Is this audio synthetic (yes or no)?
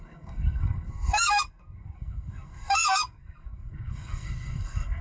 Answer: yes